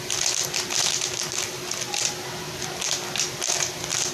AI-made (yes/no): yes